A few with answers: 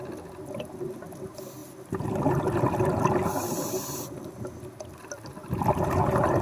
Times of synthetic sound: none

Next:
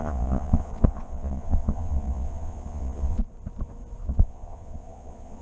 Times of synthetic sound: 0.0-3.2 (vocoder, Vocos); 4.0-5.4

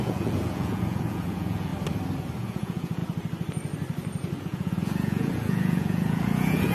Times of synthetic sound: 0.0-1.7 (vocoder, Vocos); 2.4-3.0; 4.4-6.7

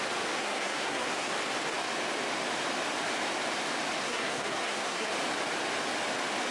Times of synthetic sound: 0.4-1.3 (codec, SNAC); 4.0-5.1

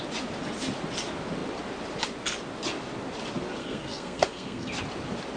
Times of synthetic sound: 3.6-4.7 (codec, SNAC)

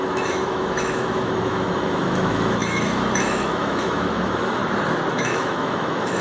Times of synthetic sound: 0.0-4.6 (autoencoder, DAC-VAE); 5.1-6.2

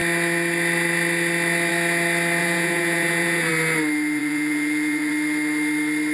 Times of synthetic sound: 2.4-3.5 (vocoder, Vocos); 4.2-5.1

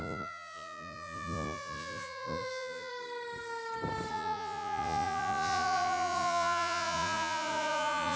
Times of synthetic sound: 0.0-2.9 (vocoder, Vocos); 4.1-8.2